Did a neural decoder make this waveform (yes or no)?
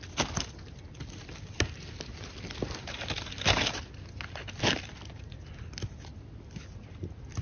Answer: no